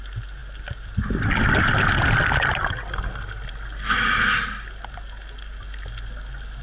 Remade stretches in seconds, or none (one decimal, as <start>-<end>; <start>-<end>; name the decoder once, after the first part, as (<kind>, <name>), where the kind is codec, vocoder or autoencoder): none